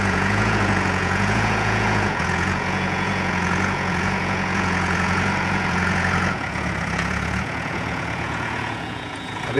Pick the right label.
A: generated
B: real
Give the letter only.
A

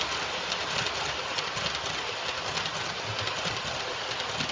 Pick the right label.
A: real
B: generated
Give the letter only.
A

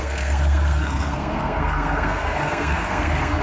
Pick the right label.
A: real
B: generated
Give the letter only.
B